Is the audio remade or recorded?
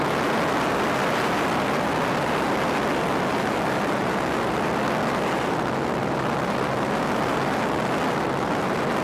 recorded